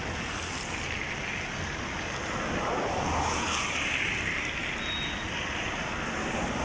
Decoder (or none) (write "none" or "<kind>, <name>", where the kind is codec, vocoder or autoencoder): none